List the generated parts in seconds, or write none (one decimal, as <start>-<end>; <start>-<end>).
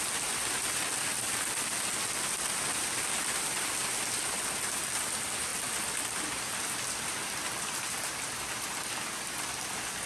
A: none